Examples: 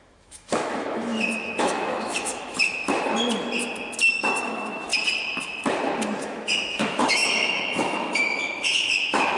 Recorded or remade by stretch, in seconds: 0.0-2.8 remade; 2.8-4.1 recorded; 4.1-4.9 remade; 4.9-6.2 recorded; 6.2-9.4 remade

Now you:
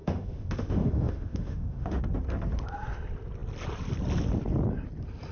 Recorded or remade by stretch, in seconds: 0.0-2.0 remade; 2.0-5.3 recorded

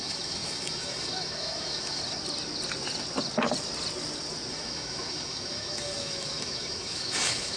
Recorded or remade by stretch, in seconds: 0.0-2.0 remade; 2.0-4.5 recorded; 4.5-7.6 remade

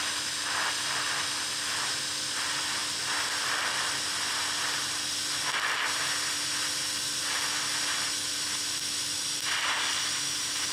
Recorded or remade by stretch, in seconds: 0.0-10.7 recorded

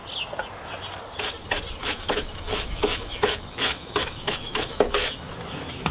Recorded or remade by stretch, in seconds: 0.0-1.8 recorded; 1.8-5.3 remade; 5.3-5.9 recorded